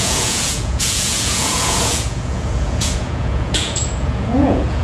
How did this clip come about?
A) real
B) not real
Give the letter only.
B